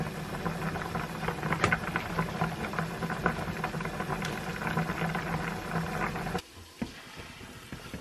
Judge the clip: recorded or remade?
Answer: recorded